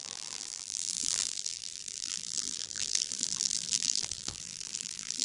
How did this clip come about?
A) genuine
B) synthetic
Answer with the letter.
B